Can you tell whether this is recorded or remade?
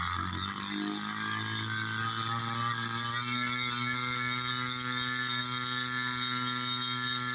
recorded